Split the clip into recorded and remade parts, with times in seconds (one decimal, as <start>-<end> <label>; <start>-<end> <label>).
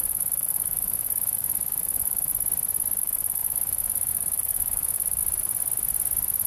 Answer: 0.0-2.3 remade; 2.3-3.0 recorded; 3.0-5.2 remade; 5.2-6.5 recorded